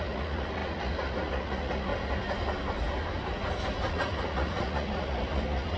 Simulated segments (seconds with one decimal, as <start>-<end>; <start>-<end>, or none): 0.0-1.9; 3.9-5.8